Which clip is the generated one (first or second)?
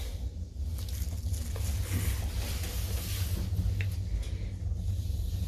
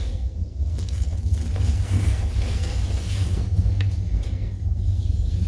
second